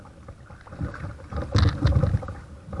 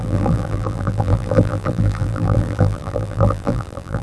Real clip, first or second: first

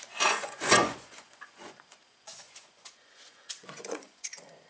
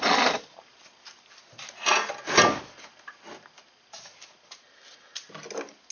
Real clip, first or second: second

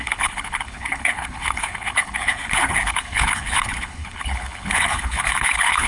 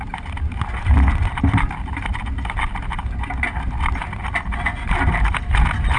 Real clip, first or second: second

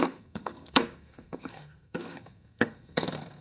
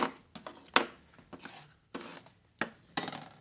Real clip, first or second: second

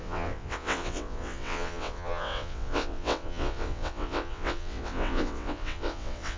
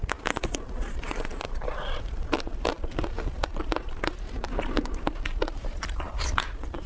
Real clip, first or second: second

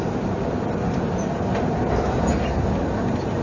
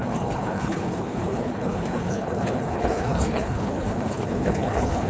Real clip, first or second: first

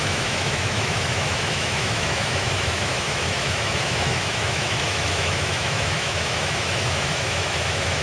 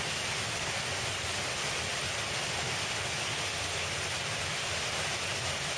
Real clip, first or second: second